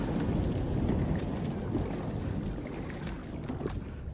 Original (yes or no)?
yes